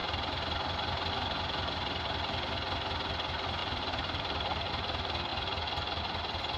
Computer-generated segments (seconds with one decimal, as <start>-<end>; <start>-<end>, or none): 3.6-4.7